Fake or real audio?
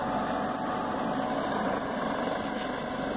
real